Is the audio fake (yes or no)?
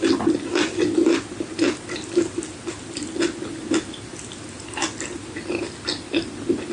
no